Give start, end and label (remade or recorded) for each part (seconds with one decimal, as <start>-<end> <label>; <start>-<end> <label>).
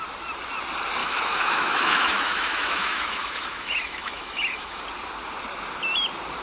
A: 0.0-1.0 recorded; 1.0-4.8 remade; 4.8-6.4 recorded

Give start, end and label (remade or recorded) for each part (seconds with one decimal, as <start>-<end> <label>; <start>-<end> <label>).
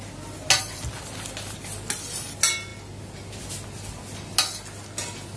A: 0.0-5.4 recorded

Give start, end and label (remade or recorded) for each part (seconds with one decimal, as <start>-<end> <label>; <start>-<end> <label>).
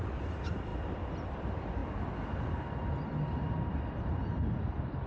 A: 0.0-0.7 remade; 0.7-1.3 recorded; 1.3-1.8 remade; 1.8-5.1 recorded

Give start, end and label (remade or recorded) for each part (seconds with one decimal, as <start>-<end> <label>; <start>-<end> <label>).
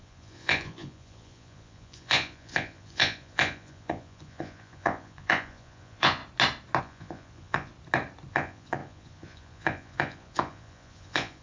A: 0.0-6.2 remade; 6.2-6.8 recorded; 6.8-7.7 remade; 7.7-8.3 recorded; 8.3-11.4 remade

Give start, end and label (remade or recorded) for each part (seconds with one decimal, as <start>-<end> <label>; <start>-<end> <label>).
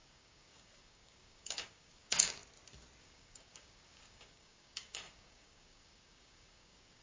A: 0.0-2.4 remade; 2.4-3.0 recorded; 3.0-7.0 remade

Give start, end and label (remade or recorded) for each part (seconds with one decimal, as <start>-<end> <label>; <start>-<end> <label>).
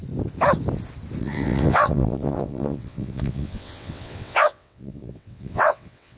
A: 0.0-1.2 recorded; 1.2-6.2 remade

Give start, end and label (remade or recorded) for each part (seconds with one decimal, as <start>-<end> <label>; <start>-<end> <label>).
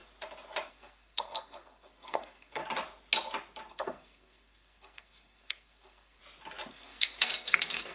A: 0.0-0.7 recorded; 0.7-2.6 remade; 2.6-3.7 recorded; 3.7-6.2 remade; 6.2-6.7 recorded; 6.7-7.9 remade